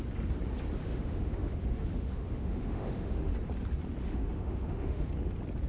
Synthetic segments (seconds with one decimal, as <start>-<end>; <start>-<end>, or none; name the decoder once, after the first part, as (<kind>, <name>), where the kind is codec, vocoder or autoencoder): 0.8-3.3 (autoencoder, DAC-VAE); 4.0-5.1